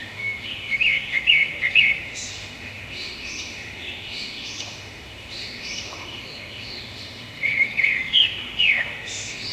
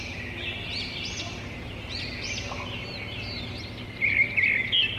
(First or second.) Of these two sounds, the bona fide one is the second